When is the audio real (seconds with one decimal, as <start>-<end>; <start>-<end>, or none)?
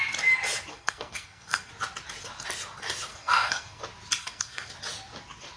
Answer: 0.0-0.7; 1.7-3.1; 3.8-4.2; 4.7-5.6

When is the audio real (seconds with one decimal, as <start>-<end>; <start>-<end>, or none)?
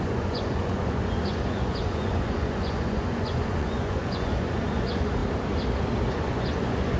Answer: 5.2-6.1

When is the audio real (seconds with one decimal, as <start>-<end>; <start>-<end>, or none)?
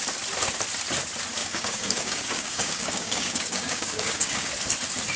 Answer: 0.0-1.4; 4.5-5.2